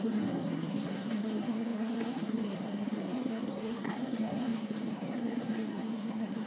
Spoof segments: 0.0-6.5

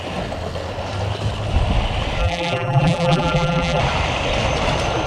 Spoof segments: 2.2-3.8